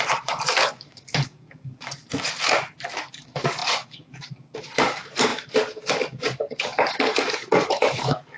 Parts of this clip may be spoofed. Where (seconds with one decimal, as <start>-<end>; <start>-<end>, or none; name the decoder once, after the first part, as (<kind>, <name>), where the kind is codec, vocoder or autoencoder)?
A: 0.0-2.0 (codec, DAC); 3.1-8.4